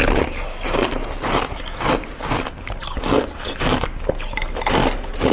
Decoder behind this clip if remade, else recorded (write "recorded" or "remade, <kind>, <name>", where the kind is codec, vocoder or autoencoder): recorded